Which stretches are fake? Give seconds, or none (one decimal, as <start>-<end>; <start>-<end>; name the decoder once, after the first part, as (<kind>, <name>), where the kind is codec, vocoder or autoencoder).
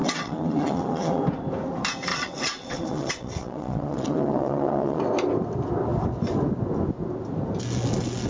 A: 0.0-1.2 (vocoder, WaveNeXt); 2.1-5.0